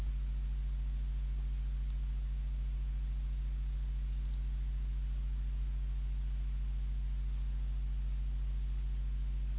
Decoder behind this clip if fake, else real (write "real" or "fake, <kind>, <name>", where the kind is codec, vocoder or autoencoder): real